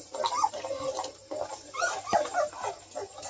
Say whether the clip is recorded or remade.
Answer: remade